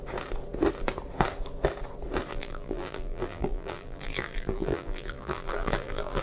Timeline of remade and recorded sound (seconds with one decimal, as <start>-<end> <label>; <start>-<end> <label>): 0.0-2.3 recorded; 2.3-6.2 remade

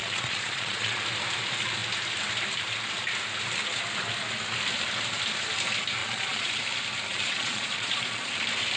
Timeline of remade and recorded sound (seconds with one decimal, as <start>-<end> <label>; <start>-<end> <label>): 0.0-1.0 remade; 1.0-6.0 recorded; 6.0-6.6 remade; 6.6-7.1 recorded; 7.1-8.3 remade; 8.3-8.8 recorded

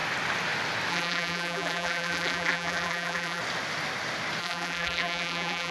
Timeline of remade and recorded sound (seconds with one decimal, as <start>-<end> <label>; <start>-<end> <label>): 0.0-0.9 recorded; 0.9-3.4 remade; 3.4-4.4 recorded; 4.4-5.7 remade

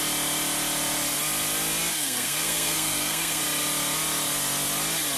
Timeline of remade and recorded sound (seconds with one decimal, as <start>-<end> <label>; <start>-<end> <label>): 0.0-1.9 recorded; 1.9-3.4 remade; 3.4-5.2 recorded

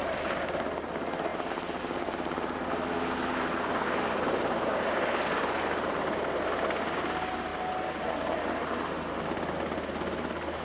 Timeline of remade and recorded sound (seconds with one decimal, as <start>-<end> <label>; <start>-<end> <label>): 0.0-7.5 recorded; 7.5-8.0 remade; 8.0-10.6 recorded